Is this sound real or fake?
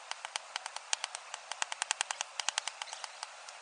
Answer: real